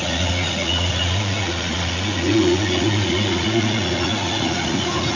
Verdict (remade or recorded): remade